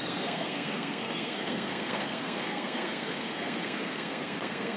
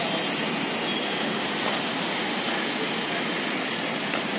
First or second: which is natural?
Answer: second